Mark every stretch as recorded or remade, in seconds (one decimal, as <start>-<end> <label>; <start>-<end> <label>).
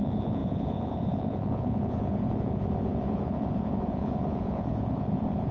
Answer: 0.0-5.5 remade